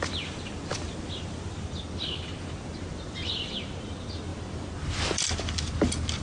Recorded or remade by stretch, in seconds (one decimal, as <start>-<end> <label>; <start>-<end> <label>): 0.0-4.3 remade; 4.3-4.9 recorded; 4.9-6.2 remade